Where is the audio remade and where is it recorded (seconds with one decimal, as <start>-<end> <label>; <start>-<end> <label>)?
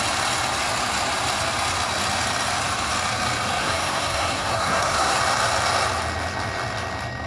0.0-3.6 recorded; 3.6-5.2 remade; 5.2-7.3 recorded